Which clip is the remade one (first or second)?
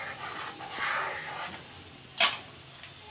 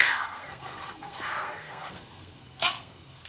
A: second